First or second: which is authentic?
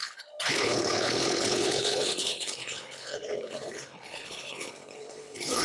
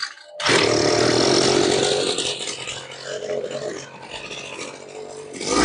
second